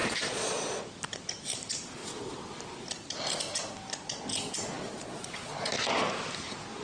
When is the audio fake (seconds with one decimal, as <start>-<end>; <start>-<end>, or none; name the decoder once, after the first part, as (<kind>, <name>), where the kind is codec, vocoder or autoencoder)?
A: 0.0-0.8 (vocoder, Vocos); 4.9-5.7